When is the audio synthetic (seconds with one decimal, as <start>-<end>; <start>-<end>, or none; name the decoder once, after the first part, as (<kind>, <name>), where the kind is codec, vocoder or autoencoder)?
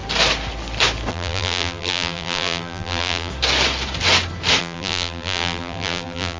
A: 1.1-3.3 (vocoder, BigVGAN v2); 4.6-6.4